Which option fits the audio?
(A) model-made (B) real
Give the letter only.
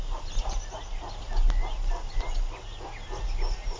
B